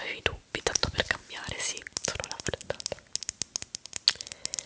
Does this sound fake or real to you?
real